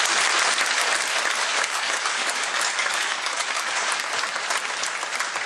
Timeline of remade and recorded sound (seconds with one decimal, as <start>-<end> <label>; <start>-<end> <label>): 0.0-1.5 recorded; 1.5-4.1 remade; 4.1-5.5 recorded

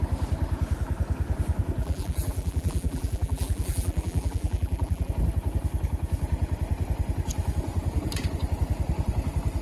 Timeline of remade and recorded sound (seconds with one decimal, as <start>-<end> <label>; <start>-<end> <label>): 0.0-1.8 recorded; 1.8-5.1 remade; 5.1-9.6 recorded

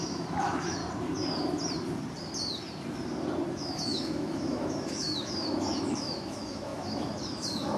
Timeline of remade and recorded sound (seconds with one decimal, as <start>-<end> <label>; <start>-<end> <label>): 0.0-0.8 remade; 0.8-3.5 recorded; 3.5-7.8 remade

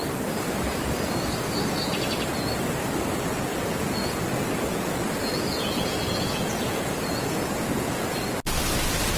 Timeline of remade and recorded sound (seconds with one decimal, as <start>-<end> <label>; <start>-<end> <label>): 0.0-3.5 recorded; 3.5-4.2 remade; 4.2-4.7 recorded; 4.7-8.1 remade; 8.1-9.2 recorded

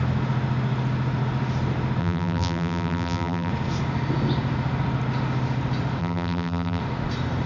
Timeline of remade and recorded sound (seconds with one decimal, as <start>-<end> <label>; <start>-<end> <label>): 0.0-2.0 recorded; 2.0-3.5 remade; 3.5-6.0 recorded; 6.0-6.8 remade; 6.8-7.5 recorded

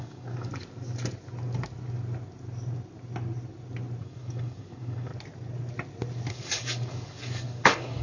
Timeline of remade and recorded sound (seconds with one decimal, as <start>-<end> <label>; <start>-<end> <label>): 0.0-0.5 remade; 0.5-4.0 recorded; 4.0-5.1 remade; 5.1-6.3 recorded; 6.3-8.0 remade